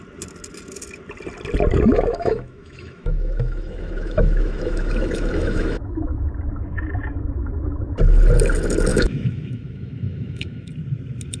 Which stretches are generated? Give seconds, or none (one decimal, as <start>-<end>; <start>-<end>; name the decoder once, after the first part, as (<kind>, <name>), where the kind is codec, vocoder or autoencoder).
1.9-6.3 (autoencoder, DAC-VAE); 8.9-10.7